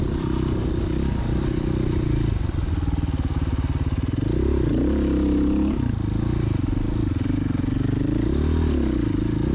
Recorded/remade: recorded